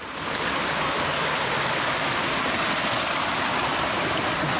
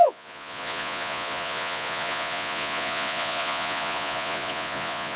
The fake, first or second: second